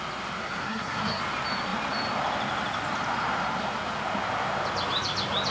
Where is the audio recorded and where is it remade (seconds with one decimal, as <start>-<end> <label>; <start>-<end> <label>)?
0.0-0.4 recorded; 0.4-1.2 remade; 1.2-5.5 recorded